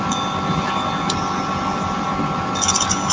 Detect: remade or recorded recorded